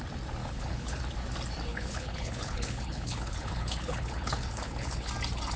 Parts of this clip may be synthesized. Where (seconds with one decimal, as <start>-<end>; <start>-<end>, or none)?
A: 0.4-1.0; 1.7-5.1